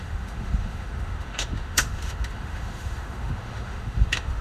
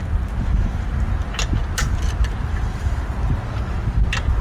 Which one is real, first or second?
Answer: second